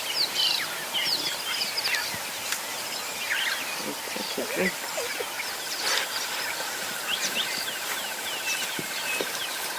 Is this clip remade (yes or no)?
no